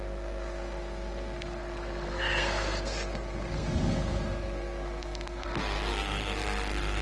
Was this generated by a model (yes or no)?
yes